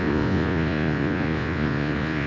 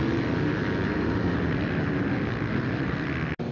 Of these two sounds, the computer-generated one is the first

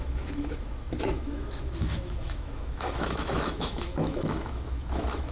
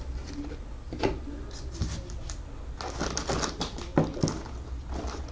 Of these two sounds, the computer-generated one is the first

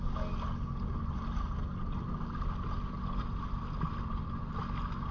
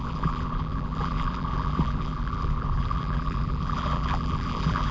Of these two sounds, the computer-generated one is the second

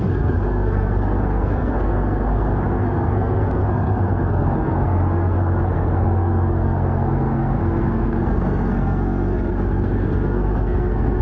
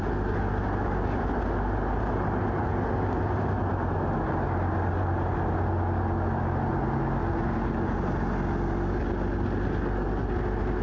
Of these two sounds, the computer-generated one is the first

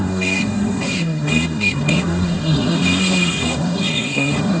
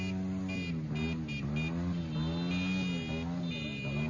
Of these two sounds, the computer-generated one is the first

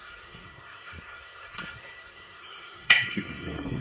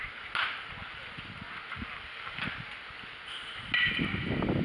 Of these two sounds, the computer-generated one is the first